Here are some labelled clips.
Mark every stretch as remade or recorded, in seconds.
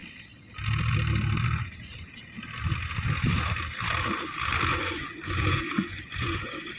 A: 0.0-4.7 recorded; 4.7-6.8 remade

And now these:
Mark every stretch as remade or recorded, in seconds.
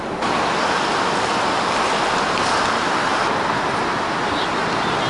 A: 0.0-5.1 recorded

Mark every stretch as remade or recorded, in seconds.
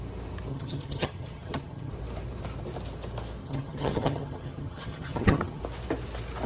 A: 0.0-0.5 recorded; 0.5-1.9 remade; 1.9-3.4 recorded; 3.4-5.6 remade; 5.6-6.5 recorded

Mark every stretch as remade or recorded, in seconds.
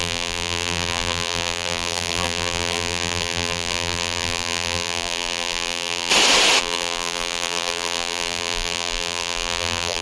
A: 0.0-6.1 remade; 6.1-6.6 recorded; 6.6-10.0 remade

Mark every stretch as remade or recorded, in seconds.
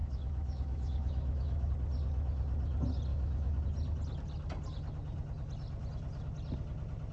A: 0.0-1.7 remade; 1.7-3.1 recorded; 3.1-3.6 remade; 3.6-7.1 recorded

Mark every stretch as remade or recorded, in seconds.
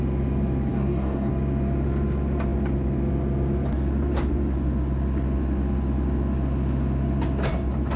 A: 0.0-0.7 recorded; 0.7-1.3 remade; 1.3-8.0 recorded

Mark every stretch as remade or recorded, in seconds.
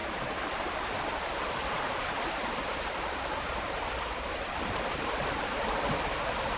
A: 0.0-6.6 recorded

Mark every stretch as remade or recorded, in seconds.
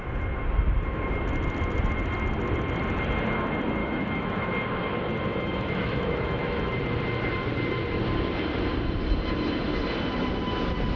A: 0.0-3.8 recorded; 3.8-4.5 remade; 4.5-5.3 recorded; 5.3-6.7 remade; 6.7-11.0 recorded